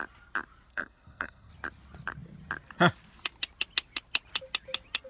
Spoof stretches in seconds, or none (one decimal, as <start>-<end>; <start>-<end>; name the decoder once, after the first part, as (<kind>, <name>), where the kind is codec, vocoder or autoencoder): 0.7-1.5 (codec, SNAC)